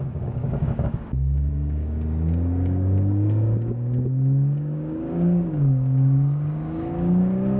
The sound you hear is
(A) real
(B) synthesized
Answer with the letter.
B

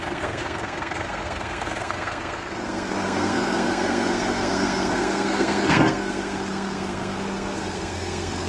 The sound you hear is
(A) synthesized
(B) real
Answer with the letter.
A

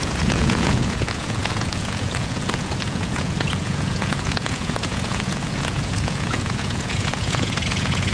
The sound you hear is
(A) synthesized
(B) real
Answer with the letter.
A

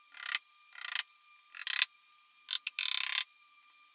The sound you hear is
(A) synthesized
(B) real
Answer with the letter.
B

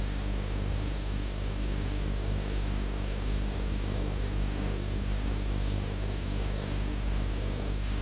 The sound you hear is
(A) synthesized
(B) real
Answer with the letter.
A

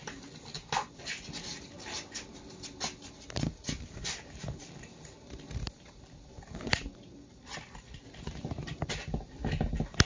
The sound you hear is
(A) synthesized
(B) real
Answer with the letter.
B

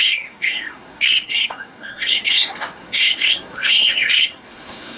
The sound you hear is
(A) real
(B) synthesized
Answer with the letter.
B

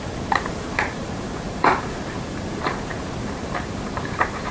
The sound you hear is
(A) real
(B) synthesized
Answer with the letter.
B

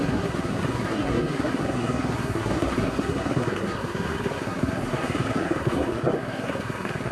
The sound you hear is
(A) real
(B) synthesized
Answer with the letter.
B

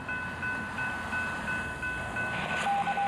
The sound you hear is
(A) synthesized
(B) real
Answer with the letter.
B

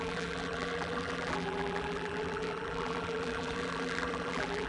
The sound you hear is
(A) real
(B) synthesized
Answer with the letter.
B